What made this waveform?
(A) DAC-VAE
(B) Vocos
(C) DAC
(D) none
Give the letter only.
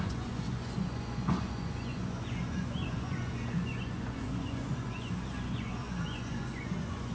B